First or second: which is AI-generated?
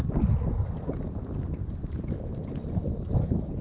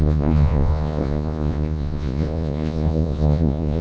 second